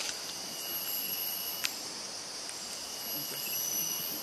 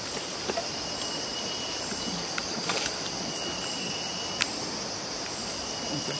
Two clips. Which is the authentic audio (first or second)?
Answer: first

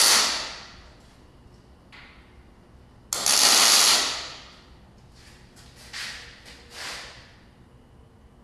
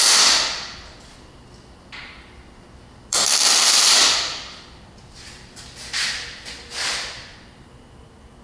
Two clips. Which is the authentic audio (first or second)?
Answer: first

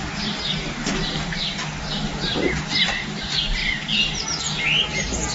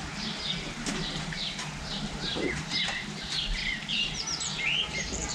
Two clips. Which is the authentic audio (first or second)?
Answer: first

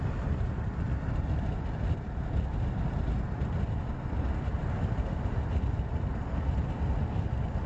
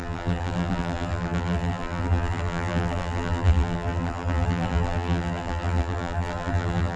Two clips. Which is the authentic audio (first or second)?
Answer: first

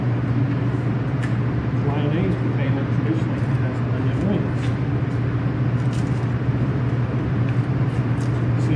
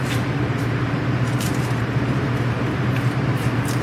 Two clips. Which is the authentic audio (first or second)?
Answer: first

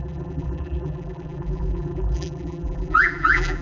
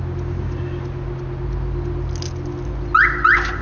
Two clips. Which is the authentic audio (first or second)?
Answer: second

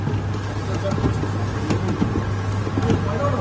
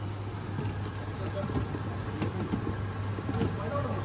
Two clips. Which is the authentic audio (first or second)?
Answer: first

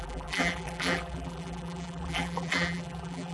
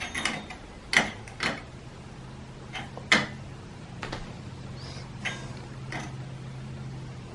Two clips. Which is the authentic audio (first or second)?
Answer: second